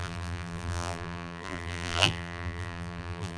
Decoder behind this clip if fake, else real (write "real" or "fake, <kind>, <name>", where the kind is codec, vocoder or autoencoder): fake, vocoder, BigVGAN v2